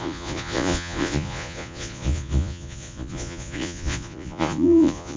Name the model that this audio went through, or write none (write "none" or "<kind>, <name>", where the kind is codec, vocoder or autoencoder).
vocoder, Vocos